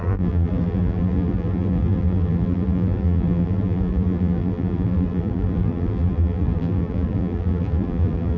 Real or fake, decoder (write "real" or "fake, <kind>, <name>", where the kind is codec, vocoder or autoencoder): fake, vocoder, BigVGAN v2